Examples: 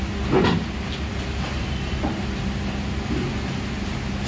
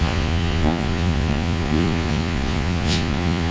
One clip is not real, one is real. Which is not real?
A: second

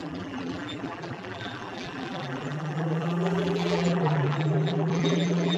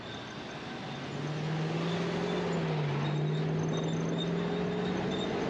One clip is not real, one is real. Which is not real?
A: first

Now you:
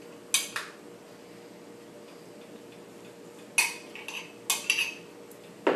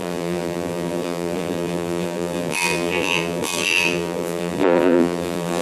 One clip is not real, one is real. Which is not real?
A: second